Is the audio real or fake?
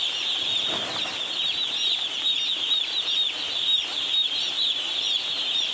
real